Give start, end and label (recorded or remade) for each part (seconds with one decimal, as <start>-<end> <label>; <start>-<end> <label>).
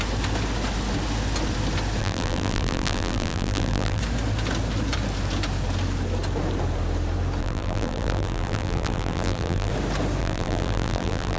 0.0-2.0 recorded; 2.0-4.0 remade; 4.0-7.4 recorded; 7.4-9.7 remade; 9.7-10.2 recorded; 10.2-11.4 remade